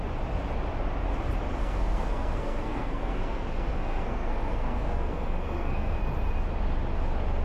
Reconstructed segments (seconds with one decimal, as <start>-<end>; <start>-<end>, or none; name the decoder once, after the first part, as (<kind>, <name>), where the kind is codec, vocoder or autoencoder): 1.6-6.0 (codec, SNAC)